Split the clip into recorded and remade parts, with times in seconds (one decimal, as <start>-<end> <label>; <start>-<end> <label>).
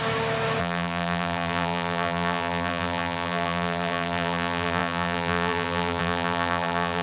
0.0-0.6 recorded; 0.6-7.0 remade